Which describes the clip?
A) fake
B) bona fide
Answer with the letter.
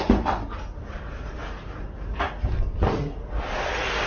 B